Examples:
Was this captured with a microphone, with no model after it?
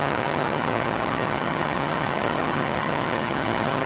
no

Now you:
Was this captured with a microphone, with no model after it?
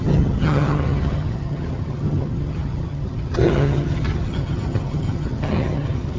no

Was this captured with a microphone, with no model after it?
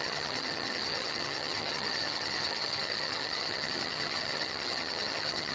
no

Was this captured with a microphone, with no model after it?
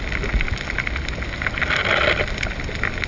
yes